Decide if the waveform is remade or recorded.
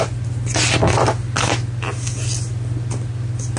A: recorded